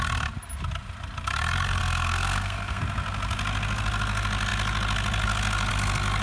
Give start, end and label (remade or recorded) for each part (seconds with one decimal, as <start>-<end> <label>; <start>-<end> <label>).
0.0-1.8 recorded; 1.8-2.8 remade; 2.8-6.2 recorded